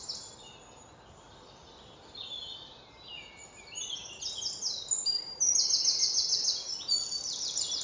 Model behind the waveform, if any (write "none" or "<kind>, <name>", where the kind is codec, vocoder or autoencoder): none